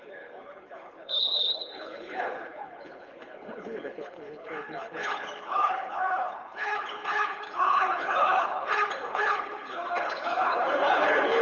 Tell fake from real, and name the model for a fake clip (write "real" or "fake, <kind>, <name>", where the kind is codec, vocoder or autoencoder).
fake, codec, HILCodec